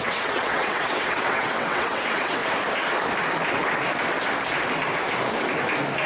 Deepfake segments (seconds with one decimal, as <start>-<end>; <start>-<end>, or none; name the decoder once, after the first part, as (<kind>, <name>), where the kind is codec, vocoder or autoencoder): 0.0-2.4 (vocoder, WaveNeXt)